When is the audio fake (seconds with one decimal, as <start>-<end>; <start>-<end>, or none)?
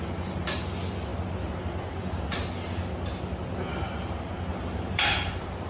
4.5-5.0